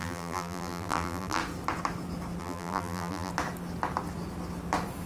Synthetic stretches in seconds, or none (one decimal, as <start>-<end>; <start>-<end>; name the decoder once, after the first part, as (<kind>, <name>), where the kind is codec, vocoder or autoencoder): 0.0-1.4 (vocoder, BigVGAN v2); 2.4-3.3